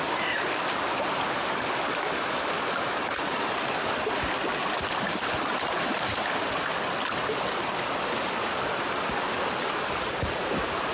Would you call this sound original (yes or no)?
yes